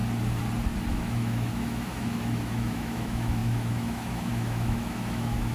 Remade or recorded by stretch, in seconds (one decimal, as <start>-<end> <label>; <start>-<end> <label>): 0.0-0.9 recorded; 0.9-5.5 remade